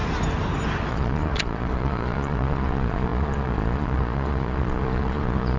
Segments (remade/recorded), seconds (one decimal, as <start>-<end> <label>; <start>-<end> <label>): 0.0-0.9 recorded; 0.9-5.6 remade